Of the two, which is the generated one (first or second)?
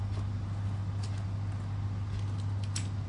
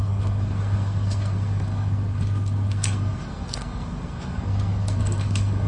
second